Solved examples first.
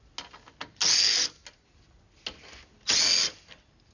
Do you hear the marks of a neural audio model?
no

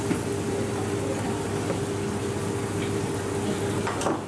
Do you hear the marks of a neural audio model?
no